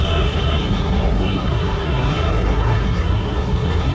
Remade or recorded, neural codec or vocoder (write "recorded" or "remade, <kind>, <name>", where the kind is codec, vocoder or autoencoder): remade, codec, SNAC